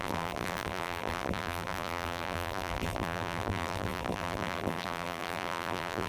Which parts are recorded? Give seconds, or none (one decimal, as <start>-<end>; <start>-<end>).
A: none